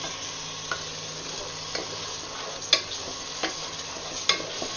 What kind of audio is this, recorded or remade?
recorded